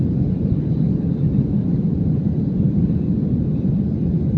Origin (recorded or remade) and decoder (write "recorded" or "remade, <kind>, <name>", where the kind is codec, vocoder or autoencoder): recorded